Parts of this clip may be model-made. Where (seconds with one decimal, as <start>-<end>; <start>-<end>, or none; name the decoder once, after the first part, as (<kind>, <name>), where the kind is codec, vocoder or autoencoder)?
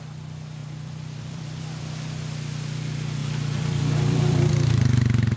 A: 0.6-1.8 (vocoder, BigVGAN v2); 3.2-4.5